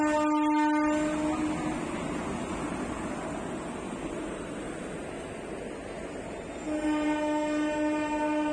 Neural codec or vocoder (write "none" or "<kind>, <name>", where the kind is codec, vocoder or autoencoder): none